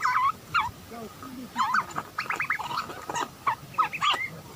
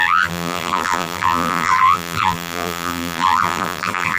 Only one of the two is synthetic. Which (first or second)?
second